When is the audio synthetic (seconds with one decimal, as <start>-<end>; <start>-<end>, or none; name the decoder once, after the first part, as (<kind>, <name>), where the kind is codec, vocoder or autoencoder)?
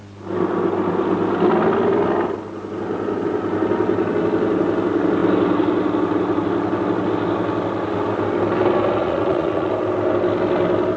9.0-9.7 (vocoder, Vocos)